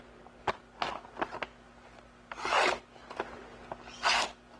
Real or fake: real